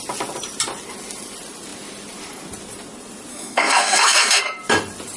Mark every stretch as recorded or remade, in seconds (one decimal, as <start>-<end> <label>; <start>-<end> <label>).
0.0-3.3 recorded; 3.3-4.4 remade; 4.4-5.2 recorded